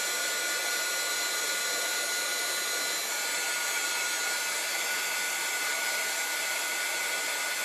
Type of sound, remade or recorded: recorded